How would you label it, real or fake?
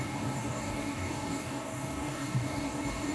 fake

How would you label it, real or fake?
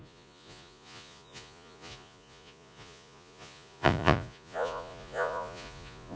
fake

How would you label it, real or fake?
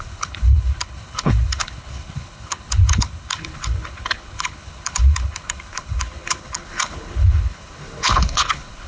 fake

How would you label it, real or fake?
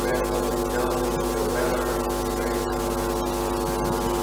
real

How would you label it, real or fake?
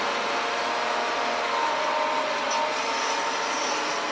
real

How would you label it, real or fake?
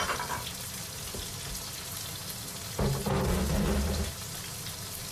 real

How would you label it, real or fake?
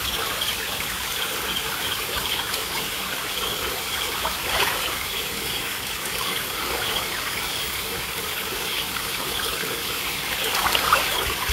fake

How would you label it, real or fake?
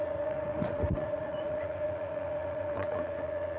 fake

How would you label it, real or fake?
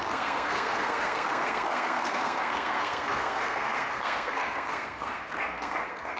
fake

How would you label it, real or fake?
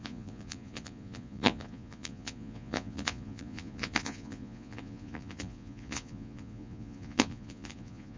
fake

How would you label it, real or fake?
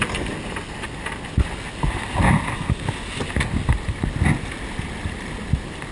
real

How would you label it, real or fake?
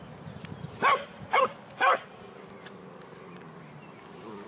real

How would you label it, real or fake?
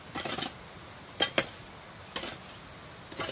real